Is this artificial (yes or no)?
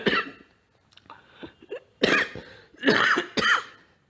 no